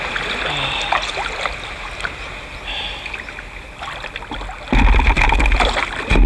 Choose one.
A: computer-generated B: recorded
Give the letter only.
B